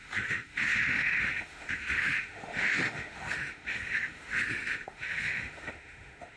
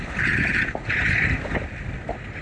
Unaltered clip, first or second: second